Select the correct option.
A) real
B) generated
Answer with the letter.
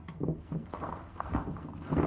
B